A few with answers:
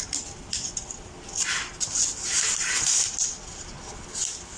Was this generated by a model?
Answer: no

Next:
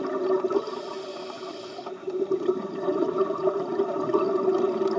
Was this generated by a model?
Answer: no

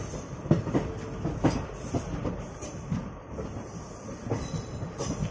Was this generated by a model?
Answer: no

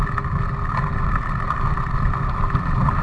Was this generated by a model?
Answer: no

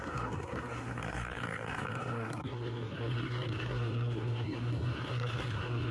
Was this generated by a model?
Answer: yes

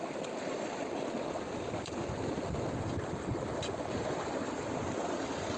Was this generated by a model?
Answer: no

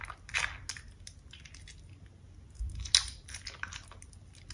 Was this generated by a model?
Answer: no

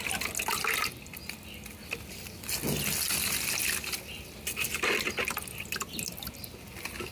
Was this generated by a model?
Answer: no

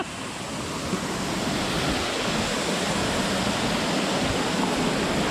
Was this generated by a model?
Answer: no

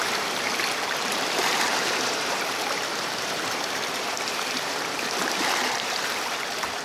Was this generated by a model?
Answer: yes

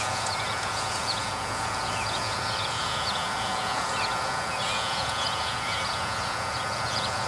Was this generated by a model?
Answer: yes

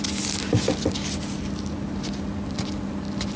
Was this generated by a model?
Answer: no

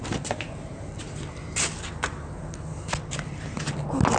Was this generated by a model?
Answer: no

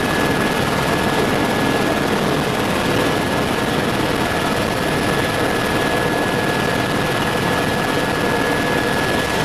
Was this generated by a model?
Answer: no